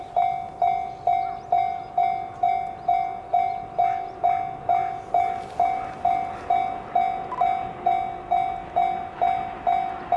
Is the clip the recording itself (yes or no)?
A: yes